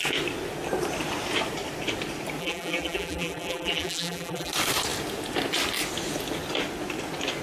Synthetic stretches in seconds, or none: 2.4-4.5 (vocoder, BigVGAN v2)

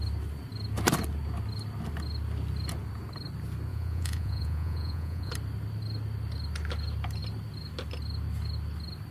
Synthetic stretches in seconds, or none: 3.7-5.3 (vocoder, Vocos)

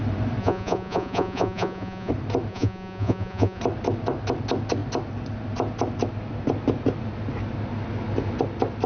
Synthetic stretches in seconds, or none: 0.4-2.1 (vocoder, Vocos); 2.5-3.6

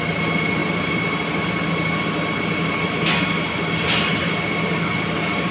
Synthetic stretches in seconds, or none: none

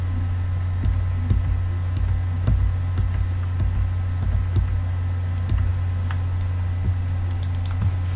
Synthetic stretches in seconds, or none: none

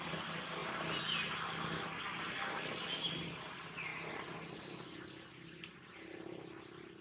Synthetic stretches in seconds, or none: none

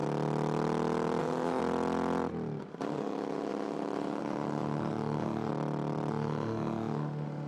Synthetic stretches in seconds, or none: 1.2-1.6 (autoencoder, DAC-VAE); 2.6-5.5; 6.1-7.5

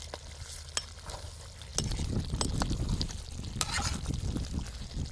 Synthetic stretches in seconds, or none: none